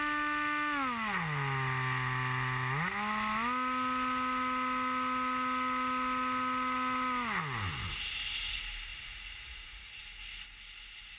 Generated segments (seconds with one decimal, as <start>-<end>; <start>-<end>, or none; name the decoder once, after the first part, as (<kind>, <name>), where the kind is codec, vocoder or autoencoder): 8.9-10.0 (vocoder, Vocos)